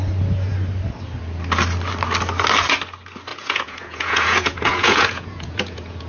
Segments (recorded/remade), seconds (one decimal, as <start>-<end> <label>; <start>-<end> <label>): 0.0-3.3 recorded; 3.3-6.1 remade